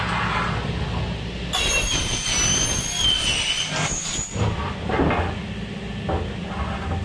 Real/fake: real